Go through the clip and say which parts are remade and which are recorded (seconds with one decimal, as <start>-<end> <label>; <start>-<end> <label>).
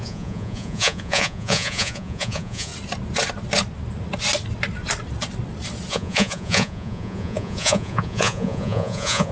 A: 0.0-2.7 remade; 2.7-5.9 recorded; 5.9-9.3 remade